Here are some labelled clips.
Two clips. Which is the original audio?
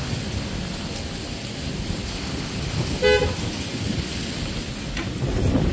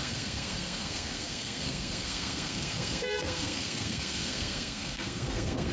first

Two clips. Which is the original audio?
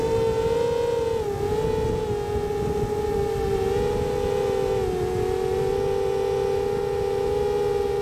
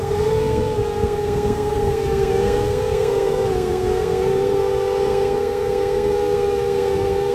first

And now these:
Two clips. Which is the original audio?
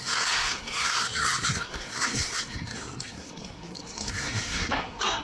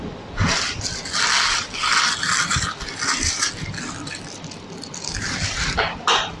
second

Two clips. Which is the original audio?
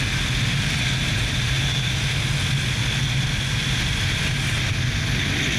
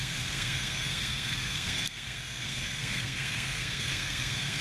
first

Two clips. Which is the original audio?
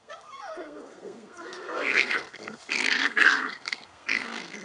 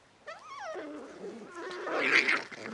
second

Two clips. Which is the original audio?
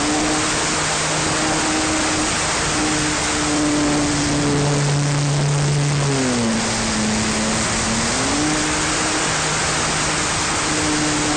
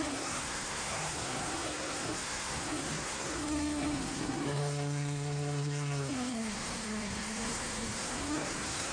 first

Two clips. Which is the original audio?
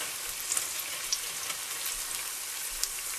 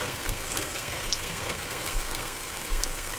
first